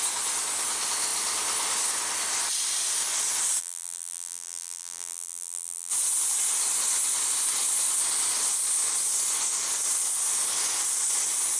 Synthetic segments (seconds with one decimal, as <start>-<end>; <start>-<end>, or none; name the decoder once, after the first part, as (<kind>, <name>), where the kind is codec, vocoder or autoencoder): 3.6-5.9 (vocoder, BigVGAN v2)